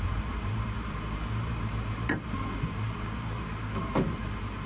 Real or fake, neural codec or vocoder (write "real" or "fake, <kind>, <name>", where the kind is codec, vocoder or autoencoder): fake, vocoder, BigVGAN v2